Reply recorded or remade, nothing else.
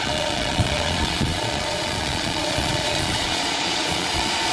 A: remade